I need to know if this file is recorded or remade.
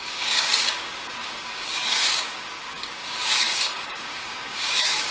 remade